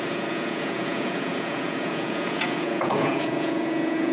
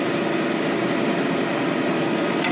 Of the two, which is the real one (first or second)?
second